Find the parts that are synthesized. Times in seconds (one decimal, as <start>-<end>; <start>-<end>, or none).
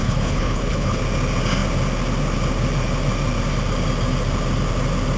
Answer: 0.0-1.0